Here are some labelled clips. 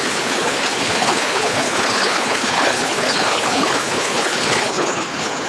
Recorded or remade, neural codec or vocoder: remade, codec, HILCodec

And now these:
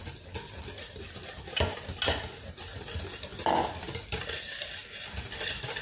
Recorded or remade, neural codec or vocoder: recorded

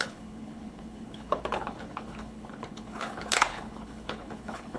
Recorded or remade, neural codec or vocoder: remade, codec, HILCodec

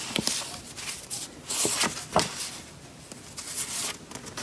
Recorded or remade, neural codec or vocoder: recorded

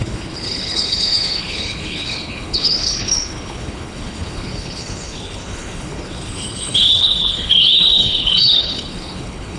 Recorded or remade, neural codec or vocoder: remade, codec, HILCodec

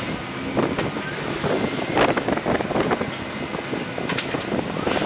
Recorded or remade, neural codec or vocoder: recorded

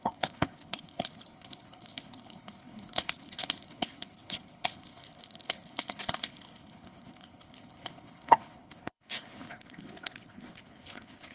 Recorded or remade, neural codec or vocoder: remade, codec, HILCodec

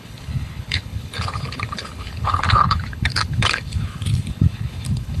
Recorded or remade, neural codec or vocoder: remade, codec, HILCodec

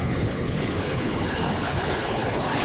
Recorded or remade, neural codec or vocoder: remade, codec, HILCodec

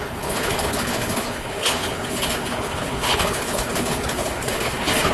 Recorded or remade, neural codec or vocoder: remade, codec, HILCodec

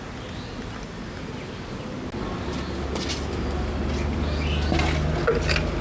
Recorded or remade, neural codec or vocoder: recorded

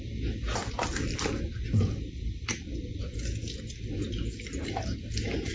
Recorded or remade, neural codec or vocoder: recorded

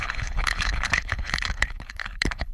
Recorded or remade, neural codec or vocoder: remade, codec, HILCodec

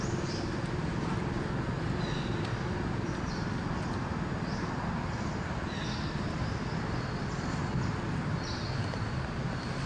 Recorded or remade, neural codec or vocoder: recorded